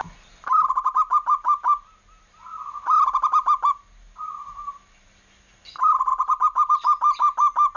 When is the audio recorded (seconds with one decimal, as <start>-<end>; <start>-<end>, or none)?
0.0-7.8